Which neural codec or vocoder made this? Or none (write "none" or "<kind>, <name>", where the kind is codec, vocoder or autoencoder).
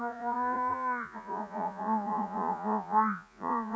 vocoder, Vocos